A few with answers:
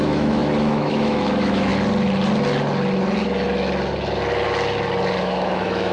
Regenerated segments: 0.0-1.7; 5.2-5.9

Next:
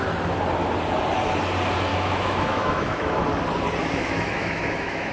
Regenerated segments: 1.9-3.2; 3.8-5.1

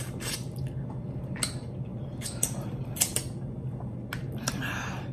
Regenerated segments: none

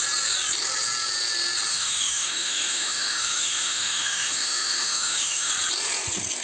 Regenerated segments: 1.7-5.5